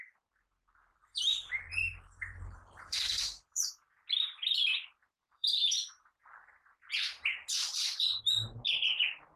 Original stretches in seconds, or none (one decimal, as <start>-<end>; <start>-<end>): 0.0-0.9; 3.7-5.0; 6.5-7.6; 8.2-9.4